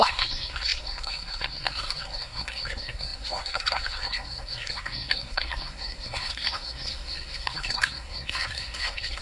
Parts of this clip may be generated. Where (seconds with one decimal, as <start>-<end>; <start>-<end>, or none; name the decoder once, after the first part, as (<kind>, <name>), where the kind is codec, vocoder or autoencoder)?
0.0-9.2 (codec, SNAC)